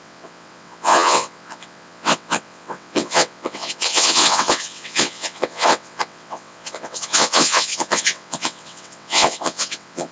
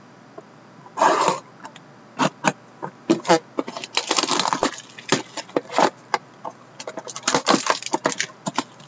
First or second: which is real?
second